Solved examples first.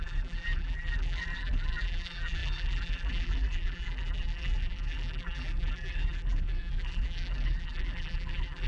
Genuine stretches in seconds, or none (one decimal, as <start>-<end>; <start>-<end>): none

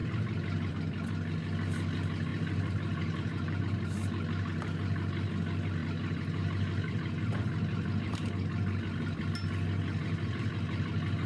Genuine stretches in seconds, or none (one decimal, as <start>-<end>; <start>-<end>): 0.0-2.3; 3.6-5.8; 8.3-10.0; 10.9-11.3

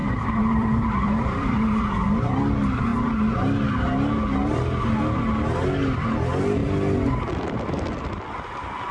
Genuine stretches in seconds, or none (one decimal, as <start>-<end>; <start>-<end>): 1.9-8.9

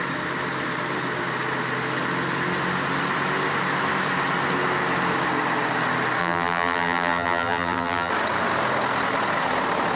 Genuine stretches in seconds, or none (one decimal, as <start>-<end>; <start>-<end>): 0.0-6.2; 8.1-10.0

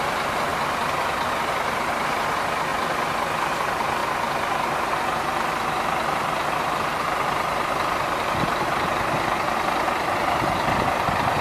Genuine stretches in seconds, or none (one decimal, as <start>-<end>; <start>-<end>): 0.5-1.3; 2.7-3.5; 4.0-4.9

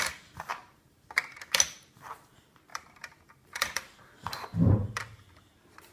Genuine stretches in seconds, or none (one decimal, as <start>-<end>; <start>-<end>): 0.0-0.5; 1.1-2.7; 5.3-5.9

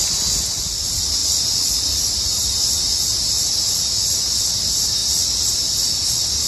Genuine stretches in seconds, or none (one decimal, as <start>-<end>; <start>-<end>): 0.0-6.5

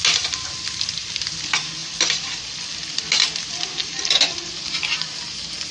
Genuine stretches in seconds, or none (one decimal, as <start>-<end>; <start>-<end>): 0.0-1.8; 3.0-3.8; 4.8-5.7